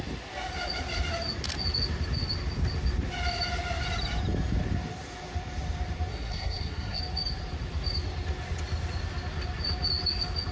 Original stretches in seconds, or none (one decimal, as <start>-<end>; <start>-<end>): 0.0-6.1; 7.0-10.5